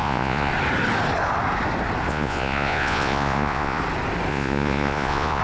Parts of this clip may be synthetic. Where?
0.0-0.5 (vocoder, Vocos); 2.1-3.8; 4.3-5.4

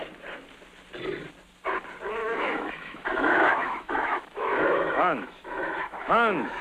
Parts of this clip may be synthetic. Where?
2.2-6.6 (autoencoder, DAC-VAE)

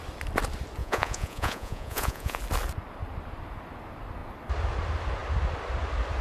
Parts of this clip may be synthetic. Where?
0.8-2.4 (vocoder, Vocos)

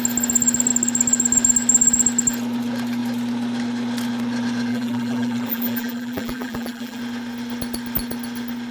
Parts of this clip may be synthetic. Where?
4.7-7.0 (vocoder, BigVGAN v2)